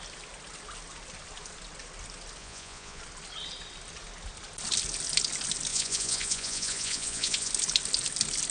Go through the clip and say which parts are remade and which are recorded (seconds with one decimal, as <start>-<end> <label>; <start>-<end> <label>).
0.0-2.4 recorded; 2.4-3.0 remade; 3.0-5.7 recorded; 5.7-7.5 remade; 7.5-8.5 recorded